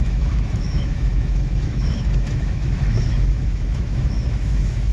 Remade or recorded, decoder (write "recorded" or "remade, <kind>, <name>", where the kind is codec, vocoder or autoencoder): remade, autoencoder, DAC-VAE